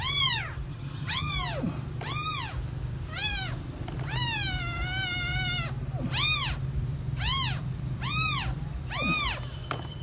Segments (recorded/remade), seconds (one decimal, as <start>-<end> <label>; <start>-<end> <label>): 0.0-0.7 recorded; 0.7-1.3 remade; 1.3-10.0 recorded